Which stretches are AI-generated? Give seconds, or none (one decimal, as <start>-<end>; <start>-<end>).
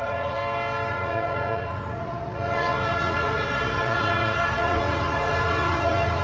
0.0-0.4; 0.9-6.2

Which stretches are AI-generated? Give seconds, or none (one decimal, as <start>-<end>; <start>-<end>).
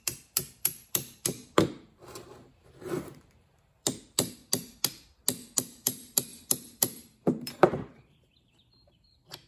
0.0-4.4; 5.7-9.5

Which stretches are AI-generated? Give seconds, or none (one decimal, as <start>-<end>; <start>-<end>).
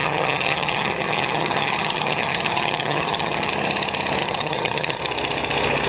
0.0-3.5; 4.2-5.0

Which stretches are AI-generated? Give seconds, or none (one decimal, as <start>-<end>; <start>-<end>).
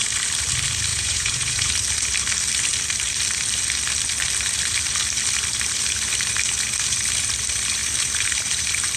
0.9-1.7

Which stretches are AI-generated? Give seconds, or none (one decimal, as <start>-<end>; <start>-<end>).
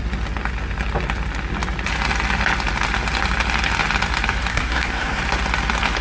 4.5-5.2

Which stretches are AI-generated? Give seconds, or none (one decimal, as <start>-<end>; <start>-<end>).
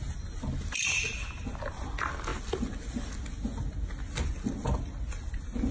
none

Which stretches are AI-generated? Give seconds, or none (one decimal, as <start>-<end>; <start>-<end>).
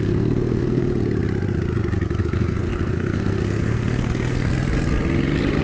0.0-0.9; 2.2-4.5